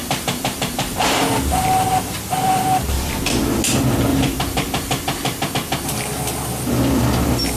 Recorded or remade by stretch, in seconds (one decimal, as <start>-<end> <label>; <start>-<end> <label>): 0.0-3.1 remade; 3.1-4.1 recorded; 4.1-5.5 remade; 5.5-7.6 recorded